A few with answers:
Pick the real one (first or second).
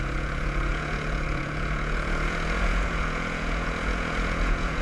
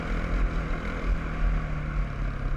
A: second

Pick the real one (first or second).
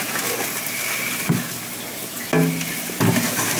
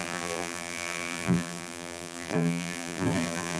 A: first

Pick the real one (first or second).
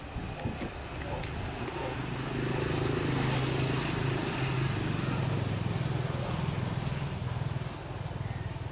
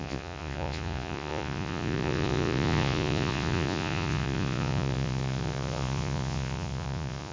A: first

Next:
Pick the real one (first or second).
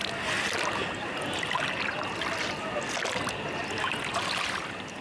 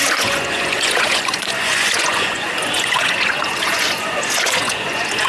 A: first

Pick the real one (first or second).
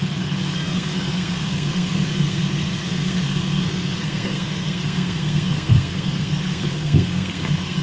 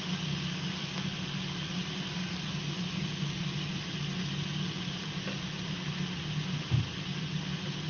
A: second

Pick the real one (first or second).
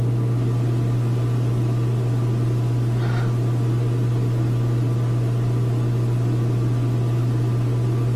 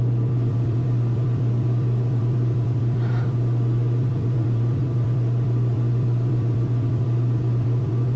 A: first